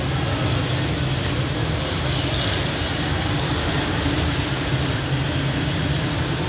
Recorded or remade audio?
recorded